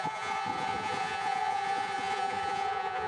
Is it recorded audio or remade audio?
remade